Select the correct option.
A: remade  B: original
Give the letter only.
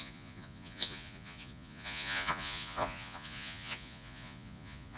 A